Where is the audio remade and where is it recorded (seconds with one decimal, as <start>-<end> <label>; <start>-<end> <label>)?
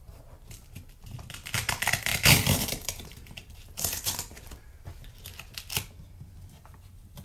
0.0-2.1 recorded; 2.1-5.2 remade; 5.2-7.2 recorded